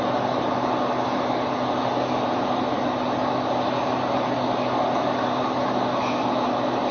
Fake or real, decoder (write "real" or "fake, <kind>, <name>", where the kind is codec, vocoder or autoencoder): real